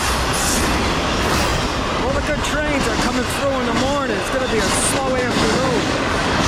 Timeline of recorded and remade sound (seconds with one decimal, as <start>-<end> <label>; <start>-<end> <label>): 0.0-5.2 recorded; 5.2-6.5 remade